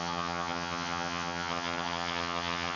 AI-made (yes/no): yes